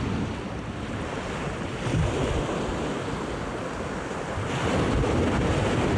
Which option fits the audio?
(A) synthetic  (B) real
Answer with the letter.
B